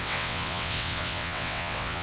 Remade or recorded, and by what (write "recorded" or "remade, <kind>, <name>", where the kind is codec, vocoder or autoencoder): remade, vocoder, WaveNeXt